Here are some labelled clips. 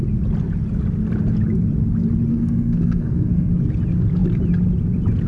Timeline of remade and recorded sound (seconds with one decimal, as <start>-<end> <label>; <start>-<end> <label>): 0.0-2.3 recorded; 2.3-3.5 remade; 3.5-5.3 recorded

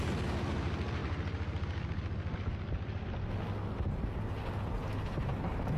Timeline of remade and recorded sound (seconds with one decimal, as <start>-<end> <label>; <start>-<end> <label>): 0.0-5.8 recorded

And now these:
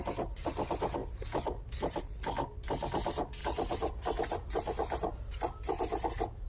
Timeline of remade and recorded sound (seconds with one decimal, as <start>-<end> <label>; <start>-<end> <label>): 0.0-6.5 recorded

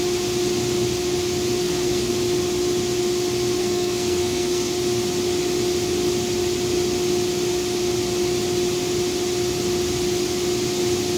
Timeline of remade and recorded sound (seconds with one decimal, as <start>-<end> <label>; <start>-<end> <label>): 0.0-1.6 recorded; 1.6-2.1 remade; 2.1-3.6 recorded; 3.6-4.7 remade; 4.7-11.2 recorded

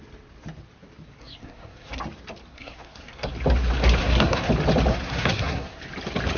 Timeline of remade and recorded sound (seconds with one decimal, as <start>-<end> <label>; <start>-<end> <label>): 0.0-1.2 recorded; 1.2-2.0 remade; 2.0-2.5 recorded; 2.5-3.3 remade; 3.3-4.0 recorded; 4.0-4.5 remade; 4.5-4.9 recorded; 4.9-5.8 remade; 5.8-6.4 recorded

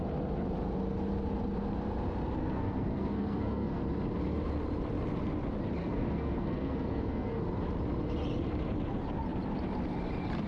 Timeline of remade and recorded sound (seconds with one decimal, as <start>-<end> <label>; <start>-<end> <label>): 0.0-2.4 recorded; 2.4-3.8 remade; 3.8-5.8 recorded; 5.8-7.4 remade; 7.4-10.5 recorded